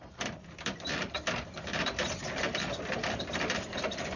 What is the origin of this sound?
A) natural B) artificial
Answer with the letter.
B